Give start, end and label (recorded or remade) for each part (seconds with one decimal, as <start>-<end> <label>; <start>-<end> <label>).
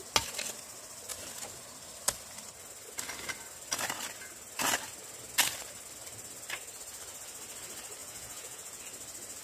0.0-8.0 recorded; 8.0-8.8 remade; 8.8-9.4 recorded